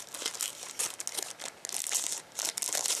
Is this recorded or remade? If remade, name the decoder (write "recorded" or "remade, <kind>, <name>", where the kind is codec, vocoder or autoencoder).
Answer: recorded